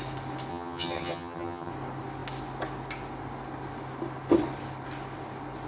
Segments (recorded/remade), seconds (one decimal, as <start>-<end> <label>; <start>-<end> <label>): 0.0-0.5 recorded; 0.5-1.7 remade; 1.7-5.7 recorded

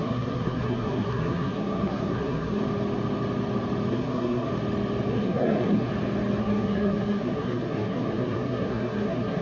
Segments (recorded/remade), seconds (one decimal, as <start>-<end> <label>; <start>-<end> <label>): 0.0-2.6 remade; 2.6-3.9 recorded; 3.9-4.5 remade; 4.5-5.1 recorded; 5.1-5.9 remade; 5.9-6.4 recorded; 6.4-9.4 remade

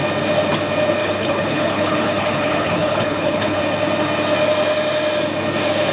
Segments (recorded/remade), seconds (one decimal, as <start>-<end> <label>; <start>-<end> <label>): 0.0-1.0 recorded; 1.0-3.6 remade; 3.6-5.9 recorded